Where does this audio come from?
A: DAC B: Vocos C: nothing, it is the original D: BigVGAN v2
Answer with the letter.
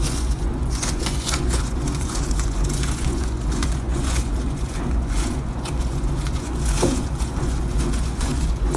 B